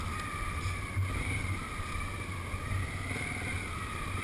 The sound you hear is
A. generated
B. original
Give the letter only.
B